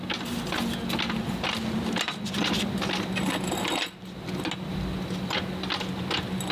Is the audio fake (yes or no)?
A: no